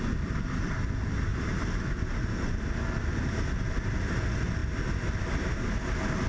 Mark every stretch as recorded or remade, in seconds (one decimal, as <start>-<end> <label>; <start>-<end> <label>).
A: 0.0-1.3 recorded; 1.3-3.8 remade; 3.8-6.3 recorded